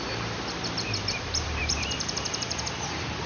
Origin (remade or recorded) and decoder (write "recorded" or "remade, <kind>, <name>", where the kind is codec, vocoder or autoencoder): remade, vocoder, BigVGAN v2